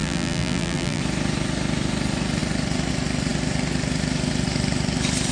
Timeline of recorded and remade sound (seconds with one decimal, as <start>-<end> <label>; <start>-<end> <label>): 0.0-1.0 remade; 1.0-5.3 recorded